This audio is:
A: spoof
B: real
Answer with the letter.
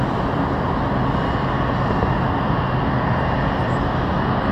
B